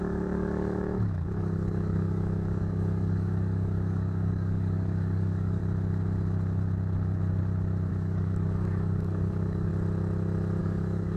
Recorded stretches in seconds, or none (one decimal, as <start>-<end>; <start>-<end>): 5.6-7.9; 9.7-10.6